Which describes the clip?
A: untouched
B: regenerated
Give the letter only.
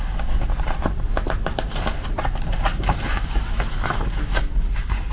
A